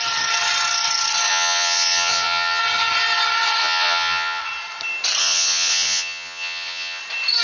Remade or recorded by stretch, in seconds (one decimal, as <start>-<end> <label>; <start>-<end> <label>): 0.0-1.3 recorded; 1.3-2.6 remade; 2.6-3.6 recorded; 3.6-4.4 remade; 4.4-5.2 recorded; 5.2-7.0 remade; 7.0-7.4 recorded